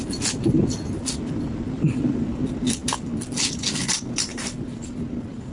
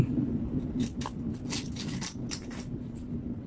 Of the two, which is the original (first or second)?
second